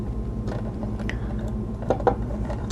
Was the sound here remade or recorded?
remade